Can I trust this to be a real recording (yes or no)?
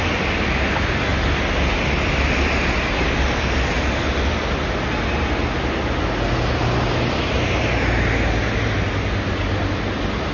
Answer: yes